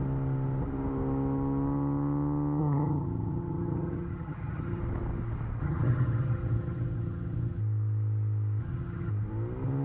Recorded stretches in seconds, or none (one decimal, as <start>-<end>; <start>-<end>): 0.0-2.6; 4.8-5.6; 7.6-8.6; 9.1-9.8